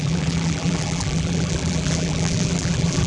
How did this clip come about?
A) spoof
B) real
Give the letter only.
A